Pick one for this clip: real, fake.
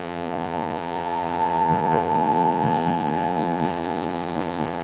fake